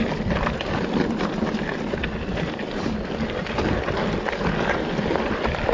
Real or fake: fake